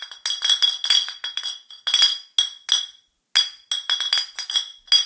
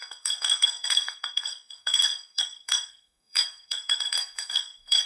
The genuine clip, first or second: first